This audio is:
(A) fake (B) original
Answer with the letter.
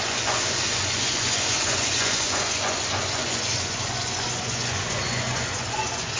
A